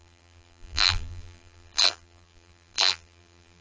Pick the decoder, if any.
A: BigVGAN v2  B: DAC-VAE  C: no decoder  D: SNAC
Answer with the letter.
A